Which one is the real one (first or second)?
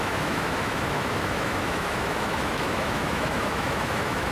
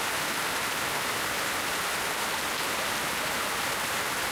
second